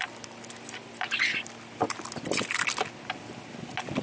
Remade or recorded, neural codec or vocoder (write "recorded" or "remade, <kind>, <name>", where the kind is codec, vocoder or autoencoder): recorded